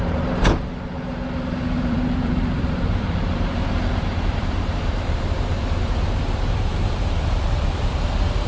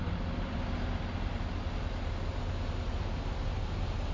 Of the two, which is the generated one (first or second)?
first